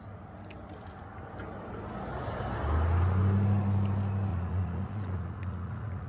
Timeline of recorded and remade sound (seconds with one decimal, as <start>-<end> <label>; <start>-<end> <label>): 0.0-4.3 recorded; 4.3-6.1 remade